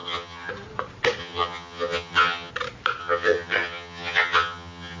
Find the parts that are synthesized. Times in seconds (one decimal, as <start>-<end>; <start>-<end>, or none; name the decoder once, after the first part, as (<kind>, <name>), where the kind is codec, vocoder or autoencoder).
0.0-0.5 (vocoder, HiFi-GAN); 1.2-2.5; 3.0-5.0